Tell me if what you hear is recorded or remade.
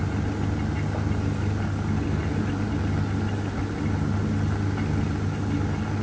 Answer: recorded